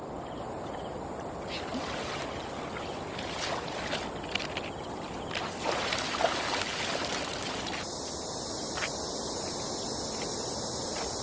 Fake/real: real